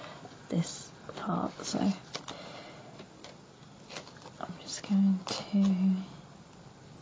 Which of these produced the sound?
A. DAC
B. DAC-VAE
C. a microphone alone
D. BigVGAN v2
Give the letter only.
C